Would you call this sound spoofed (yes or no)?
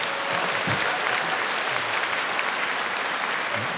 no